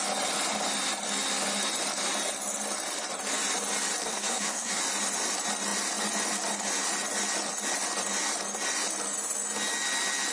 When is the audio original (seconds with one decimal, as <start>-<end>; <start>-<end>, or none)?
0.0-4.1; 4.8-10.3

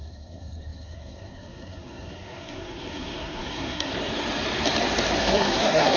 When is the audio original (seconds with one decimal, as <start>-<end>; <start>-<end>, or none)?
3.9-5.2

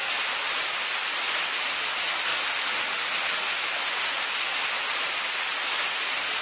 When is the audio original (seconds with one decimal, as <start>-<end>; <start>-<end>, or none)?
0.0-6.4